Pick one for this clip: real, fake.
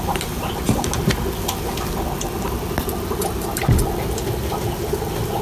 real